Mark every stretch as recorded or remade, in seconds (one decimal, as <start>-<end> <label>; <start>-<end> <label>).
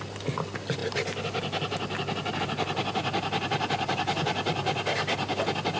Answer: 0.0-5.8 recorded